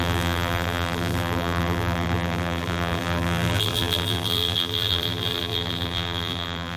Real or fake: fake